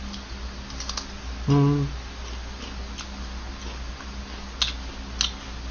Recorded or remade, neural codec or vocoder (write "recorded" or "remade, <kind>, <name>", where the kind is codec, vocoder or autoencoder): recorded